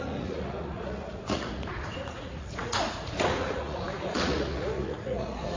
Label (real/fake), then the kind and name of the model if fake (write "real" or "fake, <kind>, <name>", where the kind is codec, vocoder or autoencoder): fake, vocoder, Vocos